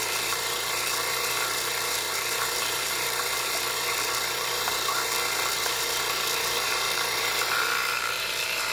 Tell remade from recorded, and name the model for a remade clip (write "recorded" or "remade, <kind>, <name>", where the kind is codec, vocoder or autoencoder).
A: remade, vocoder, BigVGAN v2